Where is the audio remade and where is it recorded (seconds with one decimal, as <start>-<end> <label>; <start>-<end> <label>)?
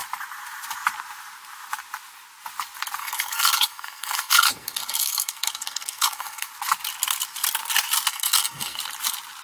0.0-3.0 recorded; 3.0-6.5 remade; 6.5-8.1 recorded; 8.1-8.8 remade; 8.8-9.4 recorded